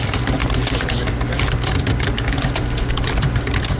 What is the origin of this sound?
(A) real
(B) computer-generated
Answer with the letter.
A